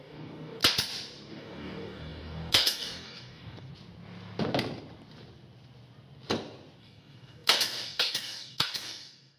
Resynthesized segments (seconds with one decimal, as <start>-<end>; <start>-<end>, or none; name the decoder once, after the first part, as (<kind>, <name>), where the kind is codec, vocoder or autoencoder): 0.0-0.6 (codec, DAC); 1.3-3.7; 6.8-9.4